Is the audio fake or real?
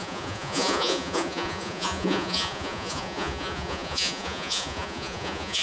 fake